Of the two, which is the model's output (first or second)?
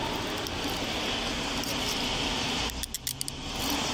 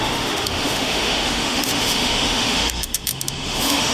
second